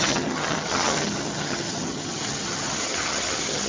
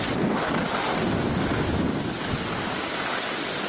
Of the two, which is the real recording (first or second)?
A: second